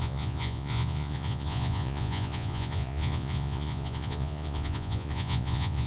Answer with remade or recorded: remade